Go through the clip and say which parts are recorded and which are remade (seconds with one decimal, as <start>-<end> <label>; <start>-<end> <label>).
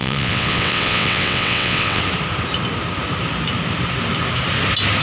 0.0-2.0 remade; 2.0-5.0 recorded